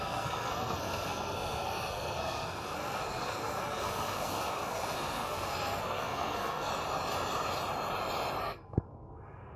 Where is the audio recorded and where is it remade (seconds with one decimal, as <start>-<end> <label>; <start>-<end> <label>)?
0.0-6.7 remade; 6.7-8.4 recorded; 8.4-9.6 remade